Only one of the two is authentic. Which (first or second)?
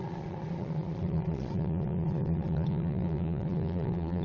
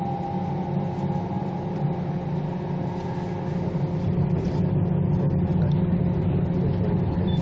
second